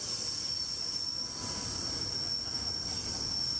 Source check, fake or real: real